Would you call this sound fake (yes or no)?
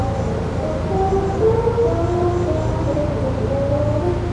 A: no